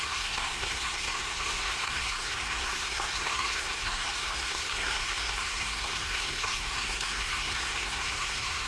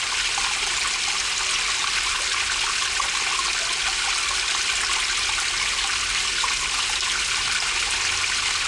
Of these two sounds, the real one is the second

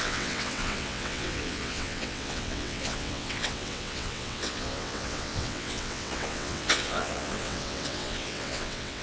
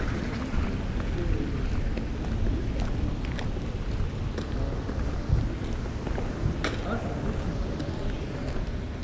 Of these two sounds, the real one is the second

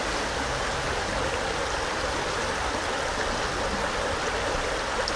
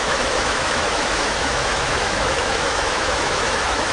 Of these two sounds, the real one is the first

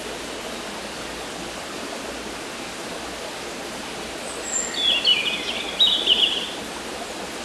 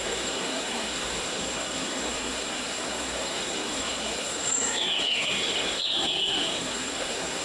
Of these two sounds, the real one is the first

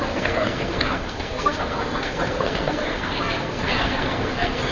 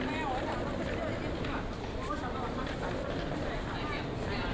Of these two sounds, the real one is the second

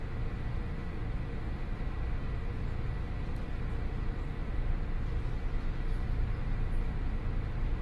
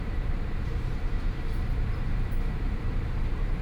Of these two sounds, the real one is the first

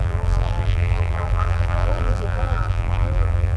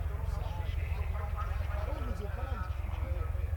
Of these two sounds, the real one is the second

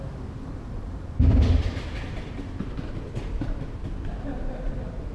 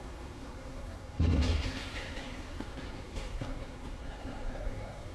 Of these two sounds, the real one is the first